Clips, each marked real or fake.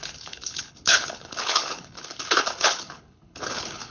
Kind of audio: fake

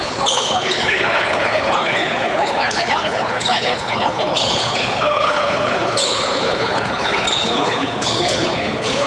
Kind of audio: fake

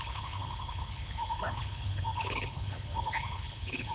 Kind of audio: fake